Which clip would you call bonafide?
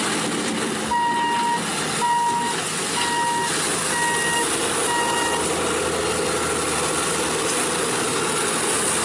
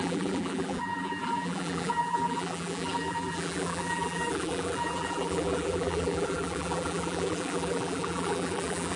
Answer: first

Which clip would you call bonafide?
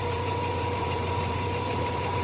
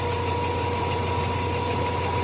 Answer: second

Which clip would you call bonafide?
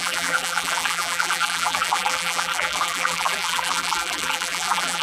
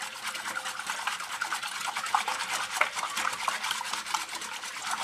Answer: second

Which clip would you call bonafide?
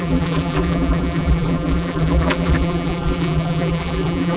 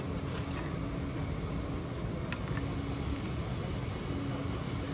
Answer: second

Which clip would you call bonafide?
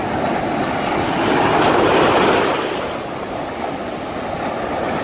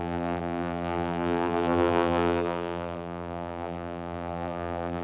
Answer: first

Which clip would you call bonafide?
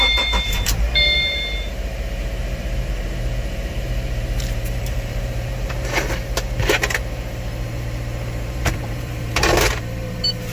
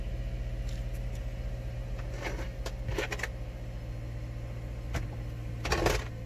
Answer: second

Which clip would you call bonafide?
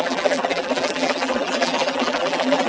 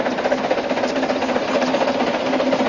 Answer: second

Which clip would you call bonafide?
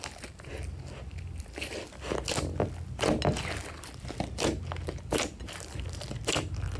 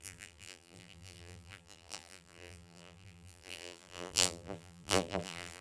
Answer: first